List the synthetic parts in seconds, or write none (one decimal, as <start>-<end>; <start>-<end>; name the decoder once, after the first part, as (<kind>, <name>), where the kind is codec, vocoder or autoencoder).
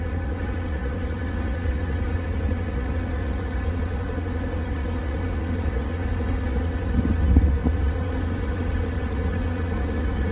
0.0-10.3 (vocoder, Vocos)